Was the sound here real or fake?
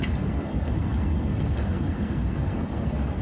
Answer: fake